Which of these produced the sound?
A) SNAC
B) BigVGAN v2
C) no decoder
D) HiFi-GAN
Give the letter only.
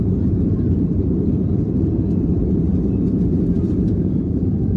B